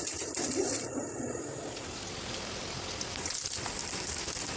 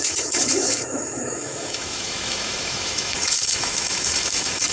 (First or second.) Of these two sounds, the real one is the first